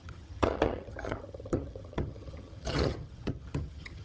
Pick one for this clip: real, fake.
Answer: fake